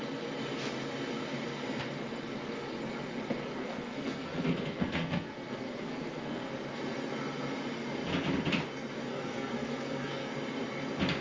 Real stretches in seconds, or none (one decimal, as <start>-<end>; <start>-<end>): 0.0-3.6; 6.5-9.1; 10.3-11.2